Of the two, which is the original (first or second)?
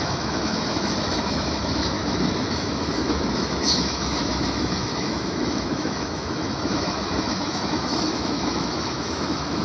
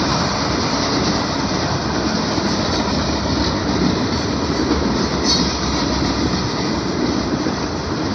second